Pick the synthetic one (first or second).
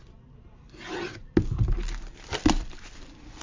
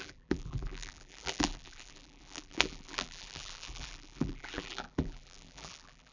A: second